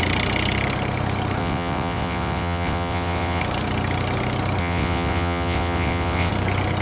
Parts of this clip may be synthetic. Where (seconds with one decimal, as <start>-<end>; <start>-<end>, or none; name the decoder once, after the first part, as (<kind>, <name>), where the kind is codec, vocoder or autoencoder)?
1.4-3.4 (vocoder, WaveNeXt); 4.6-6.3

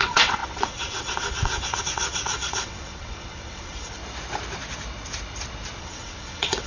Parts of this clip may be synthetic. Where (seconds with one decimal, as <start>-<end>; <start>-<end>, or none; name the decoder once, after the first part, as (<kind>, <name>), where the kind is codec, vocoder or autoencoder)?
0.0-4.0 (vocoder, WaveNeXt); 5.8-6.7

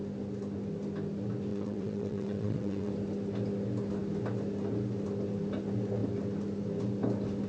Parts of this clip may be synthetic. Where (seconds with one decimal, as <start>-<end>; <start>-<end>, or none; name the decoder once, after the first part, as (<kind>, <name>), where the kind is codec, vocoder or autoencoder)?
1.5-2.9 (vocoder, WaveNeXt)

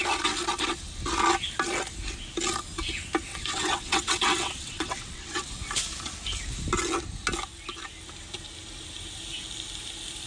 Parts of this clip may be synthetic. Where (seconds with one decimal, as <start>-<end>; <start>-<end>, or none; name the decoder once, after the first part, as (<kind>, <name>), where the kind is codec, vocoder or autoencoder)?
3.3-5.5 (vocoder, WaveNeXt)